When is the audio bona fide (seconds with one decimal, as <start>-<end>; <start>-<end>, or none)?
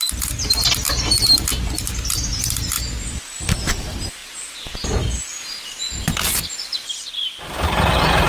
0.0-8.3